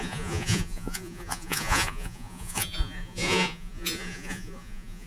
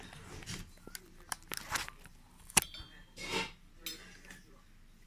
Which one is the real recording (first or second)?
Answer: second